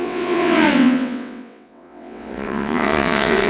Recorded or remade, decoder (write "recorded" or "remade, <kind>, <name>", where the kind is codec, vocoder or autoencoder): remade, vocoder, WaveNeXt